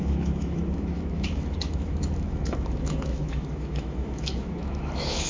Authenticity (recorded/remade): remade